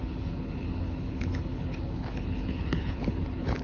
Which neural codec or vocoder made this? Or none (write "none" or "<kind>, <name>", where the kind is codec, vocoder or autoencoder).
codec, HILCodec